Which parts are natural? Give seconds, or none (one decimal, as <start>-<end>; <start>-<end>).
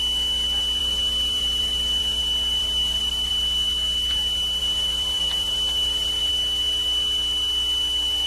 0.0-0.8; 2.2-2.6; 3.3-4.6; 6.3-8.3